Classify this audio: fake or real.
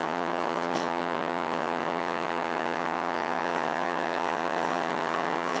fake